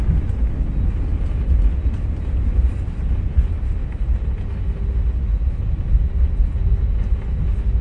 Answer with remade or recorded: recorded